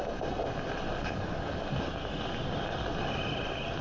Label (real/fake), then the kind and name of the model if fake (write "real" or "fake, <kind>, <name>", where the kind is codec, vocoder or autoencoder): real